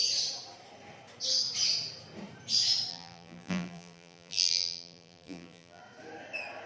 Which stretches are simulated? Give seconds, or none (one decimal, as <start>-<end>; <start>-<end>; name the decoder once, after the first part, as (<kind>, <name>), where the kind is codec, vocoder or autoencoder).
2.9-5.8 (vocoder, BigVGAN v2)